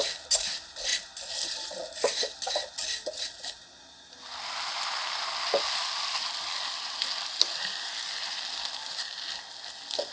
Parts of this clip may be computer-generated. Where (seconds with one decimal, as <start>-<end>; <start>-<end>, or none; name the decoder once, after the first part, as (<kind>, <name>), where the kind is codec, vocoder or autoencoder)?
none